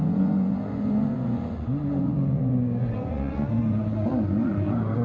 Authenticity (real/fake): fake